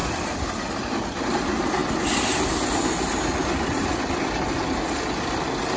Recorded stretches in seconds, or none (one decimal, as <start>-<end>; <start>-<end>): 0.0-5.8